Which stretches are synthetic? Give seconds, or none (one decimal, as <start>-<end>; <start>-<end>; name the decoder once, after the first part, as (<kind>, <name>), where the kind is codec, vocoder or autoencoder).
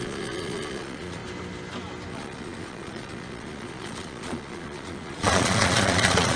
0.0-1.2 (vocoder, Vocos); 2.1-6.4